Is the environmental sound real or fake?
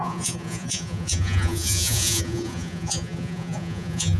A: fake